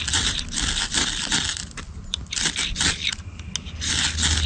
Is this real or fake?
real